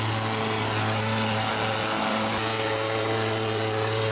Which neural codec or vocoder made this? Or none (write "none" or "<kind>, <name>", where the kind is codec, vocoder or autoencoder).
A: none